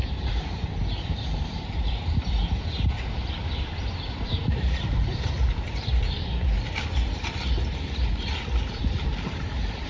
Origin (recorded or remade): remade